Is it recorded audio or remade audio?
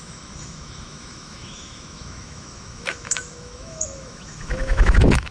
remade